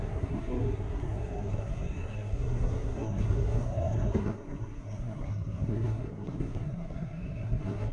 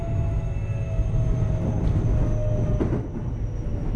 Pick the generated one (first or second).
first